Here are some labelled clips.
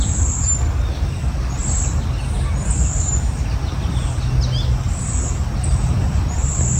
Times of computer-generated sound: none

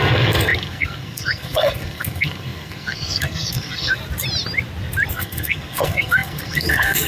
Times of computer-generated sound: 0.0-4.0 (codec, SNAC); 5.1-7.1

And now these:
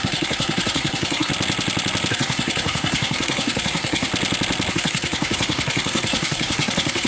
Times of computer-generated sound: 0.0-1.3 (codec, SNAC); 2.1-4.1; 4.7-7.1